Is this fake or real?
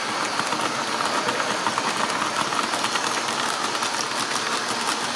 real